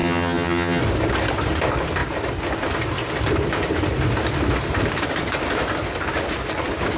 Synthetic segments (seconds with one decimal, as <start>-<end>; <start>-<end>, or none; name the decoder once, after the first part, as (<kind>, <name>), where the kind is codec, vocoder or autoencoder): 0.0-0.8 (vocoder, HiFi-GAN)